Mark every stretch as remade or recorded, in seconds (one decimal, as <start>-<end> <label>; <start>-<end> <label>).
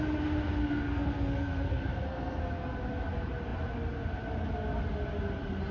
0.0-0.6 recorded; 0.6-2.4 remade; 2.4-5.7 recorded